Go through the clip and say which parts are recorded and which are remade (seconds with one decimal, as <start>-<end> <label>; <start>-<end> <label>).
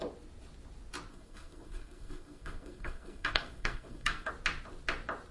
0.0-1.1 recorded; 1.1-4.3 remade; 4.3-5.3 recorded